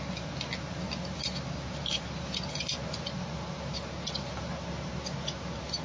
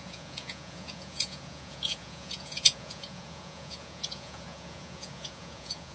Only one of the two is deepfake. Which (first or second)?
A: second